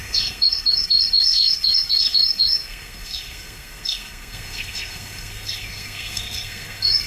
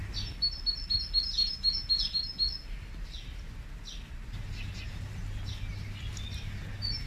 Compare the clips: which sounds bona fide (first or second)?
second